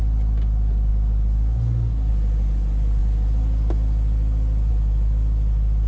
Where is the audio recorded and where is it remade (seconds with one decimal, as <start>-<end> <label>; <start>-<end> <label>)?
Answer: 0.0-5.9 recorded